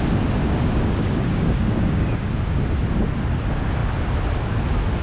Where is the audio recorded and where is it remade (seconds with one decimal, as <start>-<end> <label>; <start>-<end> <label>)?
0.0-0.4 recorded; 0.4-2.6 remade; 2.6-5.0 recorded